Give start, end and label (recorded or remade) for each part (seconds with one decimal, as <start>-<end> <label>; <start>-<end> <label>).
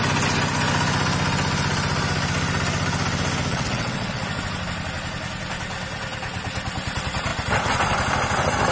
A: 0.0-3.5 recorded; 3.5-4.2 remade; 4.2-8.7 recorded